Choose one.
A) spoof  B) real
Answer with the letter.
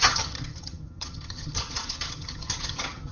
A